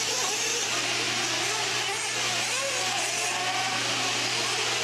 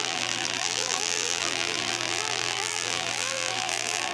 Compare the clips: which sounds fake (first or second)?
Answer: second